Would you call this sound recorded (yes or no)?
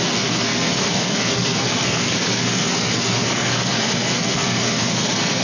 no